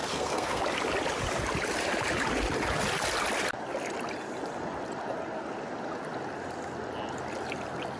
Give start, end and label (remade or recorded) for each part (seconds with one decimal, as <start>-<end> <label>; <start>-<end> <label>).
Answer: 0.0-0.6 remade; 0.6-8.0 recorded